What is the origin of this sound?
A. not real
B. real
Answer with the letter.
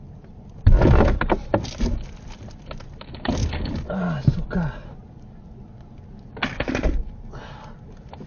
B